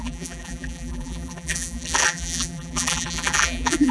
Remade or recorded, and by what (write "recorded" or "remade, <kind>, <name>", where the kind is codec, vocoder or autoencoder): remade, vocoder, BigVGAN v2